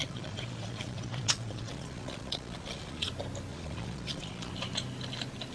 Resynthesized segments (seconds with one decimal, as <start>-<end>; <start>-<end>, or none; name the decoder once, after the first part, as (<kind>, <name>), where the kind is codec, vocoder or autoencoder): 0.0-3.1 (vocoder, Vocos); 3.5-4.5